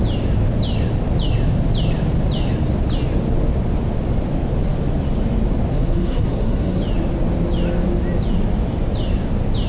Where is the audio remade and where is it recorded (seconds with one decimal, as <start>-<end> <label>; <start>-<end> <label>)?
0.0-5.7 recorded; 5.7-6.8 remade; 6.8-9.7 recorded